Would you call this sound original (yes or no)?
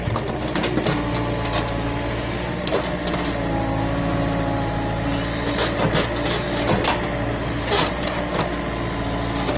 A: yes